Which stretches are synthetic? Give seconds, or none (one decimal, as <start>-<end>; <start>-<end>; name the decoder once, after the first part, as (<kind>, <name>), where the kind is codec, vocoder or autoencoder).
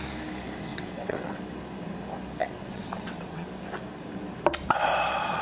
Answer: 0.7-1.4 (vocoder, WaveNeXt); 2.4-3.5